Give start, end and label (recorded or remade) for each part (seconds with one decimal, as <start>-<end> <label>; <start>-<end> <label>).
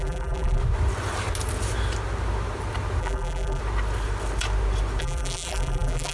0.0-0.6 remade; 0.6-3.0 recorded; 3.0-3.6 remade; 3.6-5.0 recorded; 5.0-6.1 remade